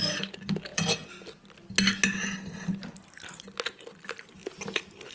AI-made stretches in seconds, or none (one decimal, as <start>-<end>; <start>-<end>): none